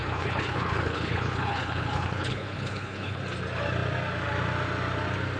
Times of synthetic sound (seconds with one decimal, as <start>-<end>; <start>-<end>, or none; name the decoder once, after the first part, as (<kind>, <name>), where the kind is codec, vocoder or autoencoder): 0.0-3.2 (codec, HILCodec)